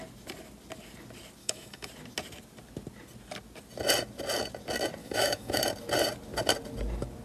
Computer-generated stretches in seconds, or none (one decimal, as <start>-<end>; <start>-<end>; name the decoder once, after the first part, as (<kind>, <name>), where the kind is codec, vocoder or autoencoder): 1.4-1.9 (autoencoder, DAC-VAE); 5.0-5.6